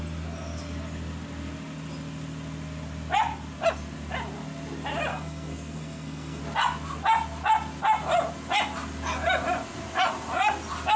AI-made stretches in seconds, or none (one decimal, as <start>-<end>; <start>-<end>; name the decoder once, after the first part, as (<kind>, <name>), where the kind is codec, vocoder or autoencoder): 5.1-6.4 (codec, SNAC)